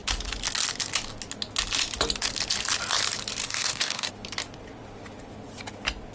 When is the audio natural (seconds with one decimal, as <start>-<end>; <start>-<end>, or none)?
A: 0.0-3.4; 4.1-6.1